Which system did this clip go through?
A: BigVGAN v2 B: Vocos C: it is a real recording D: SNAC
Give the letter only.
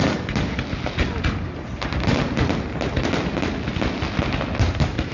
C